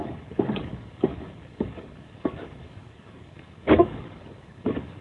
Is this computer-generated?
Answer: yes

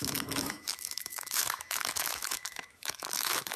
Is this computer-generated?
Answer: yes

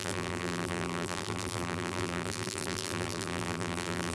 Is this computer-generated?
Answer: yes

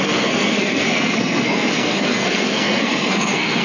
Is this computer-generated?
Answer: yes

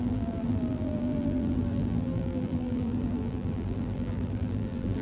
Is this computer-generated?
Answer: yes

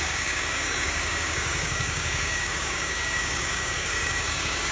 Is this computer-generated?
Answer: yes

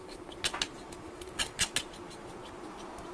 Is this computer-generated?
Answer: no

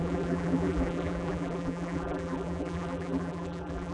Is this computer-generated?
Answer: yes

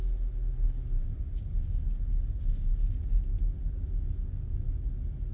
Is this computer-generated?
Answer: no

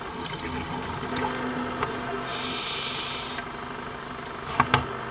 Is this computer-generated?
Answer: no